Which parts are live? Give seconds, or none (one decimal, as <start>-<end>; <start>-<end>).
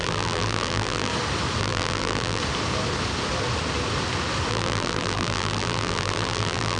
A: 1.1-1.6; 2.4-4.5